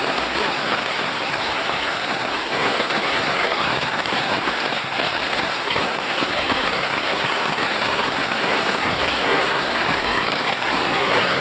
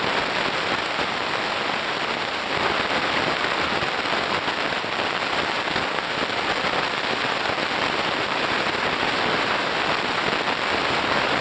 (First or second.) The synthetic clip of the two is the first